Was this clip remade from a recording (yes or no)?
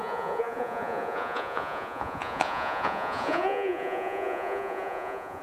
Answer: yes